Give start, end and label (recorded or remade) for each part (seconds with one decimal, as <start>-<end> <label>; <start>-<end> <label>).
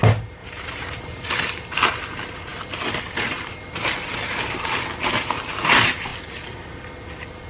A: 0.0-0.4 recorded; 0.4-1.3 remade; 1.3-6.1 recorded; 6.1-6.7 remade; 6.7-7.5 recorded